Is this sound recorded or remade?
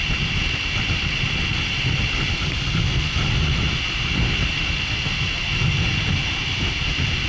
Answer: recorded